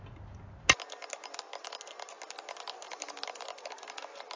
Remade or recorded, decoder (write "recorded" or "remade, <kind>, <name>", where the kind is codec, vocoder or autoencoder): recorded